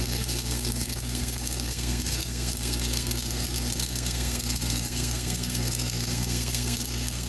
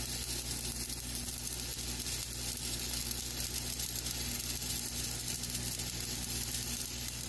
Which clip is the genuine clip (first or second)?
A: second